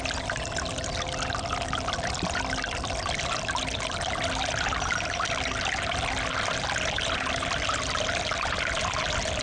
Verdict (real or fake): real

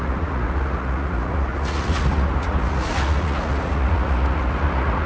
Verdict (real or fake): fake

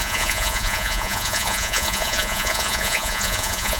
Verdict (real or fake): fake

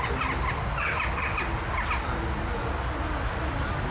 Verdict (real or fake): real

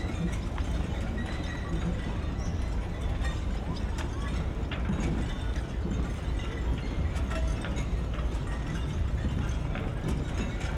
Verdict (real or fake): real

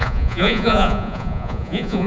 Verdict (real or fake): fake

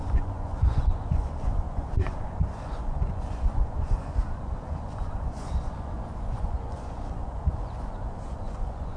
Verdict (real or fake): fake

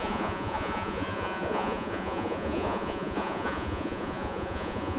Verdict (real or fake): fake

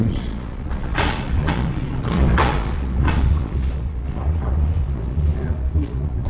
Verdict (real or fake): fake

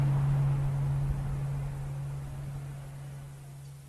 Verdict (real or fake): real